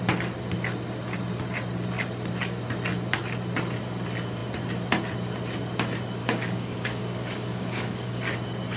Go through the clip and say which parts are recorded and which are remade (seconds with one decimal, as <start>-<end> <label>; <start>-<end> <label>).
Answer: 0.0-6.2 recorded; 6.2-8.2 remade; 8.2-8.8 recorded